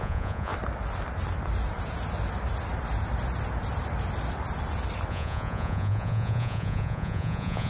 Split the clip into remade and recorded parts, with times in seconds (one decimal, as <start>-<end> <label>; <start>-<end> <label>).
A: 0.0-0.5 remade; 0.5-5.1 recorded; 5.1-7.7 remade